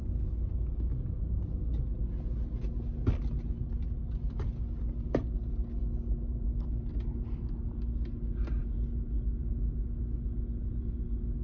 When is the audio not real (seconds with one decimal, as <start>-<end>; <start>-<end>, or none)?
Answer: none